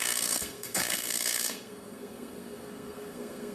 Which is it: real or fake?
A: fake